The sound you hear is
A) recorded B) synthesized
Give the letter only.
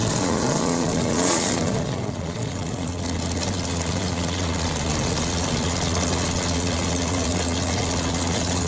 B